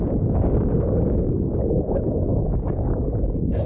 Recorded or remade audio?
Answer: remade